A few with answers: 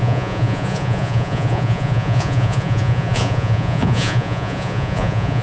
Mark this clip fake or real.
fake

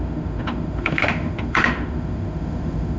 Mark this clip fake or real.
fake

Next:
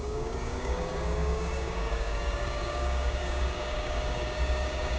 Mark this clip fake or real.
fake